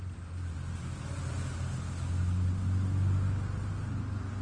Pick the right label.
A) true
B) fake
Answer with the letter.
A